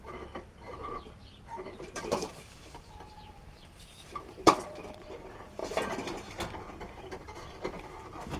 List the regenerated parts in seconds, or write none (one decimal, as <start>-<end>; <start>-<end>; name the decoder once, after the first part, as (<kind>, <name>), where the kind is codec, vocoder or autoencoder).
0.0-5.6 (vocoder, BigVGAN v2); 7.0-8.4